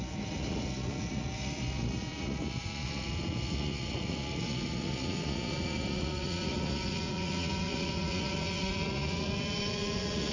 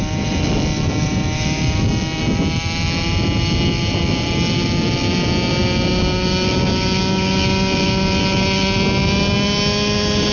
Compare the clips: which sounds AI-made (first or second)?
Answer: first